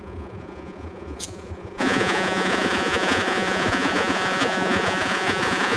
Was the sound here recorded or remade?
remade